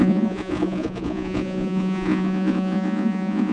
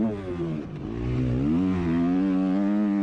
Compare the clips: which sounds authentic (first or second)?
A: second